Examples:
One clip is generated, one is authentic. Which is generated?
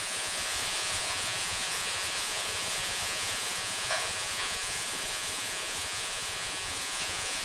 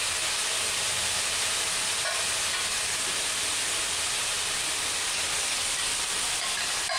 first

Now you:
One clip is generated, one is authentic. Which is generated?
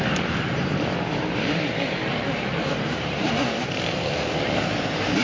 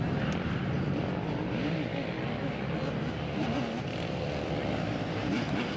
first